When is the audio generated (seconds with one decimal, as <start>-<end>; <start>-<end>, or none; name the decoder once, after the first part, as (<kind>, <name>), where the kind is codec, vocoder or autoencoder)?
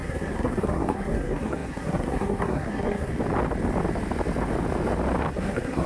0.0-3.1 (codec, SNAC); 5.3-5.9